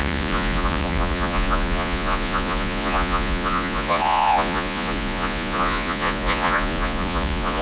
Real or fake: fake